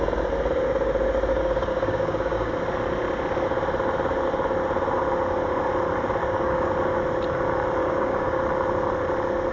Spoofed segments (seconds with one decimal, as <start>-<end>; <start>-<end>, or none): 1.3-2.5; 6.2-6.7; 7.8-8.4